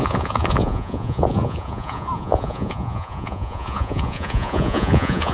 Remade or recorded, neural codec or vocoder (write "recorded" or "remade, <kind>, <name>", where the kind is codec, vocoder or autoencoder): remade, vocoder, Vocos